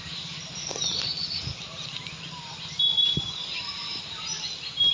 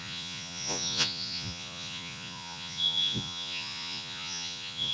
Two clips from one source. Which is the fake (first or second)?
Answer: second